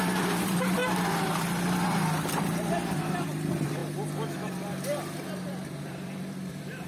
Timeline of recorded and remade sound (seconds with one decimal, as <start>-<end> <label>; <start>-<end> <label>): 0.0-0.8 remade; 0.8-1.8 recorded; 1.8-3.8 remade; 3.8-5.8 recorded; 5.8-6.9 remade